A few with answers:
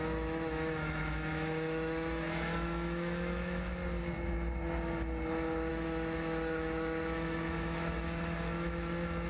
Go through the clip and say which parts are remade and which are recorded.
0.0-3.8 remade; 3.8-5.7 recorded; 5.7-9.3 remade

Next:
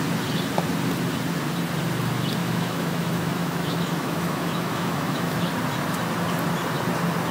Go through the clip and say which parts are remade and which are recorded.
0.0-2.4 recorded; 2.4-5.5 remade; 5.5-7.3 recorded

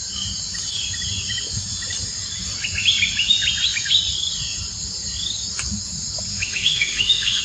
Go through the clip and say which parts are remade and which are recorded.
0.0-6.3 recorded; 6.3-7.4 remade

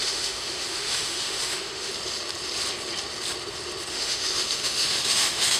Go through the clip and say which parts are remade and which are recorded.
0.0-1.9 remade; 1.9-3.9 recorded; 3.9-5.6 remade

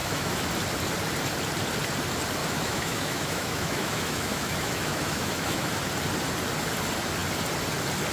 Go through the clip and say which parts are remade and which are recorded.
0.0-0.5 remade; 0.5-2.4 recorded; 2.4-5.8 remade; 5.8-8.1 recorded

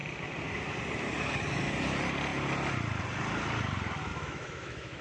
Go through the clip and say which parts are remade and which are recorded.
0.0-4.1 recorded; 4.1-5.0 remade

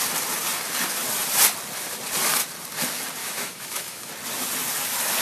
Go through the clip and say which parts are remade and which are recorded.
0.0-3.2 recorded; 3.2-4.1 remade; 4.1-5.2 recorded